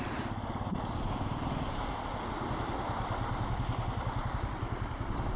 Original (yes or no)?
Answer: yes